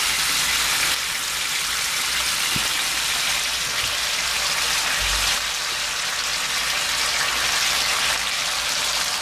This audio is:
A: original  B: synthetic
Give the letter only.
A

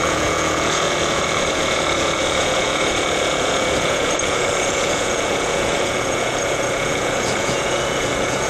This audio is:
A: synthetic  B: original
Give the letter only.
A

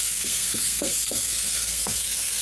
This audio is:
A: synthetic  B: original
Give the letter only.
A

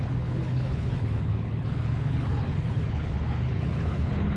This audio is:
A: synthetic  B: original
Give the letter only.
A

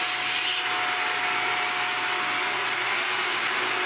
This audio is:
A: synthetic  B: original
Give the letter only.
B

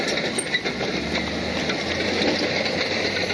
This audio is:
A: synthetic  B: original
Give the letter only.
B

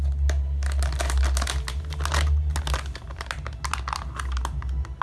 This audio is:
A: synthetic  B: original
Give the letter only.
B